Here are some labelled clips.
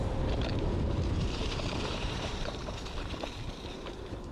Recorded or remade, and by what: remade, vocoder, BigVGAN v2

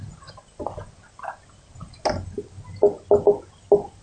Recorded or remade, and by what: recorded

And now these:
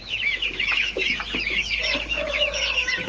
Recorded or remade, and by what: remade, autoencoder, DAC-VAE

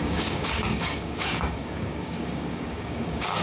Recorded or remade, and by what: remade, codec, DAC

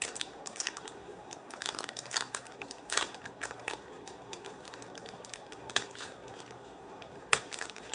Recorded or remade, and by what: remade, codec, SNAC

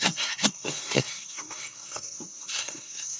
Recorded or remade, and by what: remade, codec, SNAC